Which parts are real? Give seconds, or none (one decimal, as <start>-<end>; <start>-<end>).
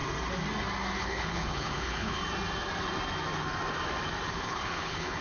0.0-1.0; 2.2-4.3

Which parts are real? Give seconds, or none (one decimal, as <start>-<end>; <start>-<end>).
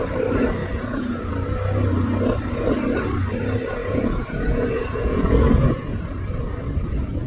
0.0-0.6; 1.3-3.8; 6.0-7.3